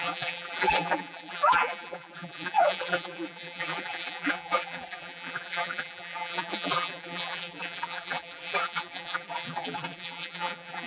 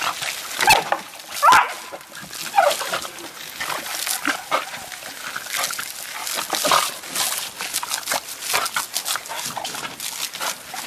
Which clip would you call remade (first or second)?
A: first